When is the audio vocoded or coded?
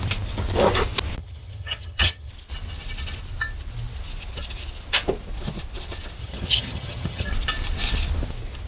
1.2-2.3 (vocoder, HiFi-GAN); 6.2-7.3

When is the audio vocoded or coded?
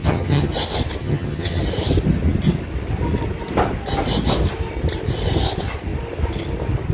0.0-0.5 (vocoder, HiFi-GAN); 1.0-1.6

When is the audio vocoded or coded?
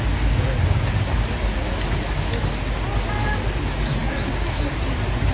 none